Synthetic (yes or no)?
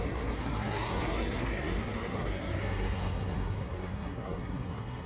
yes